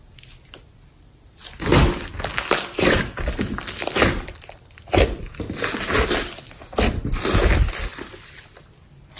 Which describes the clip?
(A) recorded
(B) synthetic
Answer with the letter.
A